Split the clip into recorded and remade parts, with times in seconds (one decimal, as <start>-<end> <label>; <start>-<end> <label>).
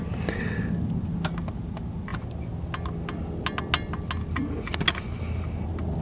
0.0-6.0 recorded